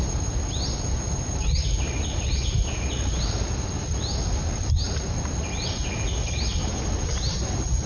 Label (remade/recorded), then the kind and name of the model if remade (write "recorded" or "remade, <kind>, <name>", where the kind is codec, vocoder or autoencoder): recorded